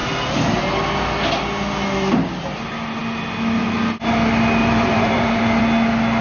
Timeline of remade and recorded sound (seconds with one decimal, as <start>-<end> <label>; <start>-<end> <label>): 0.0-4.6 recorded; 4.6-5.6 remade; 5.6-6.2 recorded